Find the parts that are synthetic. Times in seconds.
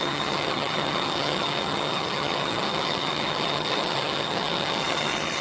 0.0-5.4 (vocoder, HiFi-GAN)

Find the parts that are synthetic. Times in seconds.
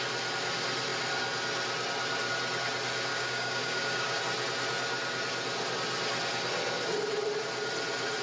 3.1-4.2 (codec, DAC)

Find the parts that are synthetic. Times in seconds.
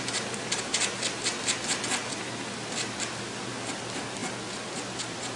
none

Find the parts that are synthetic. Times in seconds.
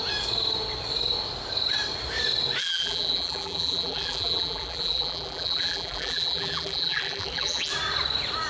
2.6-7.7 (vocoder, BigVGAN v2)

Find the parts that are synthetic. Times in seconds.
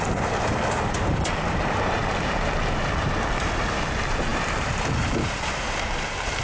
0.0-6.4 (vocoder, BigVGAN v2)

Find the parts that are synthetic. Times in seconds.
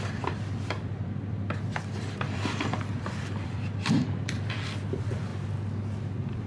0.0-5.3 (vocoder, BigVGAN v2); 6.0-6.5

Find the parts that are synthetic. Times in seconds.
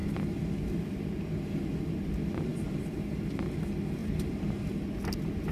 2.5-3.3 (vocoder, BigVGAN v2); 4.0-4.5